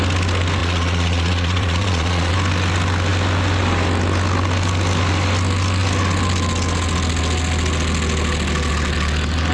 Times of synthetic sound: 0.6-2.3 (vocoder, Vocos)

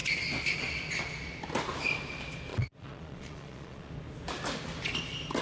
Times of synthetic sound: 2.5-3.9 (vocoder, Vocos)

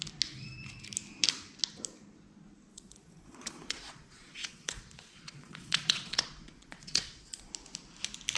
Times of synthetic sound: 2.7-7.5 (vocoder, Vocos)